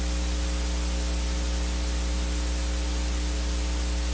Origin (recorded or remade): recorded